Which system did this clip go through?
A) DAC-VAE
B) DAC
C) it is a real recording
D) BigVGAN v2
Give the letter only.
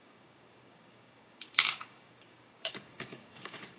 B